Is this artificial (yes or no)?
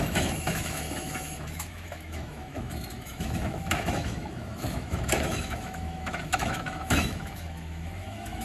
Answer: yes